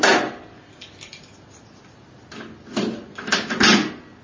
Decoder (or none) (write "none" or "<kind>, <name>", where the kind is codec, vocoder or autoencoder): none